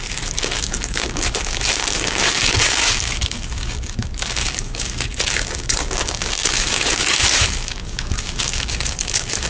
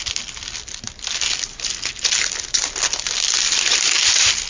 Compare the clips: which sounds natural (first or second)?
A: second